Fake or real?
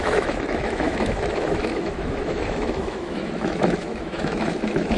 fake